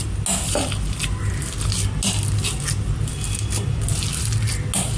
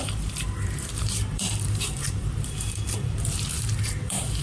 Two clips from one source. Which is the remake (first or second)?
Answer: second